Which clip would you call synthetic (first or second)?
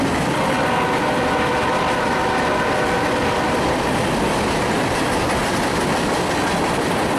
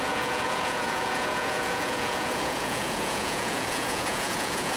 second